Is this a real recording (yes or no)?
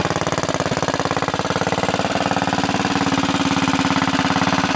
yes